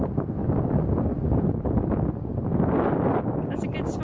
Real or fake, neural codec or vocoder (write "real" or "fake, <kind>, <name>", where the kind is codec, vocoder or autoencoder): real